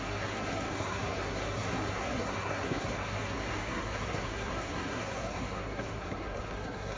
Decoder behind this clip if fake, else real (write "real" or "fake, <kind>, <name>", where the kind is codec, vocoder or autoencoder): fake, codec, SNAC